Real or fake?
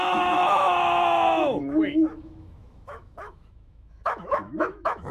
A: fake